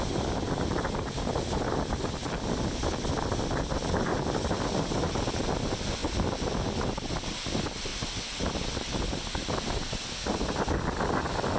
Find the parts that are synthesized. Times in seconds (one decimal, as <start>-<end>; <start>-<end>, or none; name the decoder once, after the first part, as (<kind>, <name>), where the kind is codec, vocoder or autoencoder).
4.1-5.1 (vocoder, BigVGAN v2); 6.0-6.5; 7.9-9.9